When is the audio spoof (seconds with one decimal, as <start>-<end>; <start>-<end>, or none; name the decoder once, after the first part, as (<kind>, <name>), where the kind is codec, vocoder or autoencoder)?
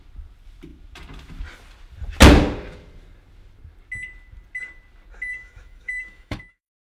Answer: 5.3-6.8 (autoencoder, DAC-VAE)